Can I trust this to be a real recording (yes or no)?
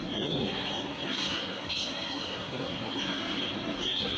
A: no